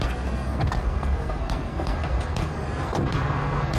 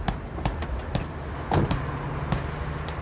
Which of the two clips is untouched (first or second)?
second